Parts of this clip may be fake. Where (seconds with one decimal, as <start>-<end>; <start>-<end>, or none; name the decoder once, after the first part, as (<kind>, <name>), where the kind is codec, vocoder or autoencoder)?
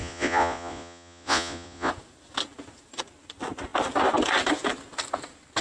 0.0-1.9 (vocoder, Vocos)